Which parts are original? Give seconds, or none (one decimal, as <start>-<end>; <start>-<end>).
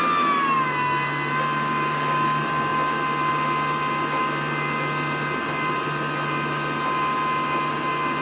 0.0-8.2